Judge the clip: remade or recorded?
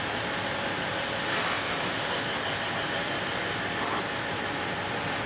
recorded